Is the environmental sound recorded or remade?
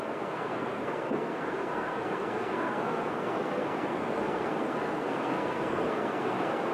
remade